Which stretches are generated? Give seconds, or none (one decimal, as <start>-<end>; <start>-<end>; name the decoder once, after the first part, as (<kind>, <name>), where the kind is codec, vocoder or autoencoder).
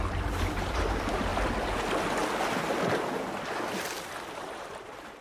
0.0-1.3 (vocoder, BigVGAN v2); 4.0-5.2